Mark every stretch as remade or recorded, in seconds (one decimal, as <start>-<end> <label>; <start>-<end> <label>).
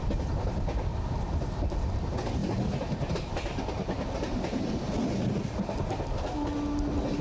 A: 0.0-0.9 recorded; 0.9-1.9 remade; 1.9-2.4 recorded; 2.4-3.1 remade; 3.1-7.2 recorded